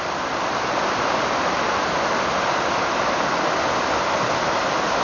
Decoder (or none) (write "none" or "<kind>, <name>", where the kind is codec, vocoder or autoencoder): none